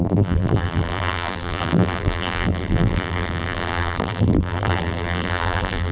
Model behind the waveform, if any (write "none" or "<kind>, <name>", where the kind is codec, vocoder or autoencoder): vocoder, BigVGAN v2